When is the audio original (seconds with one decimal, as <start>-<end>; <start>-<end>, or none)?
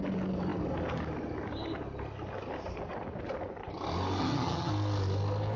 0.0-4.2; 4.7-5.6